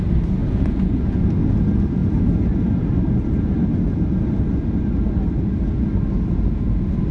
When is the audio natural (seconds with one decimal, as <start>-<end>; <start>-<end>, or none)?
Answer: 0.0-0.4; 1.2-7.1

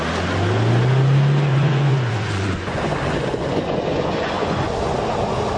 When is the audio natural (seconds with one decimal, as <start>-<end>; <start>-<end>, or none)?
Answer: 0.0-1.5; 4.8-5.6

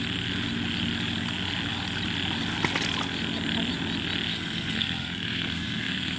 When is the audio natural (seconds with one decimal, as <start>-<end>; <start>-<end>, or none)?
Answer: 0.0-4.3

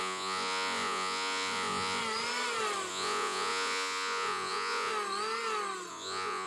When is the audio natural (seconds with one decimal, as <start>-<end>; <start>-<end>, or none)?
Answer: 2.0-2.9; 4.9-5.9

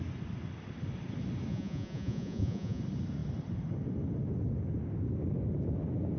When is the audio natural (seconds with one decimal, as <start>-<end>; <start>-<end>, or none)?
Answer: 0.0-1.5; 2.8-6.2

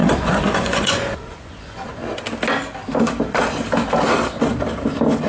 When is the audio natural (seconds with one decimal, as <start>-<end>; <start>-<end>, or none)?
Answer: 2.0-5.3

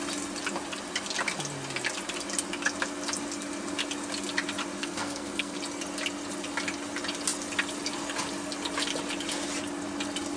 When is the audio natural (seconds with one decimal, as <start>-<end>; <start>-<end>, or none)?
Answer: 0.0-4.8; 5.6-10.4

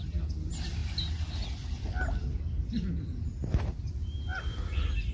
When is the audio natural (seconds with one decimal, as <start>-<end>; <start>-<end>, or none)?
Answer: 0.0-5.1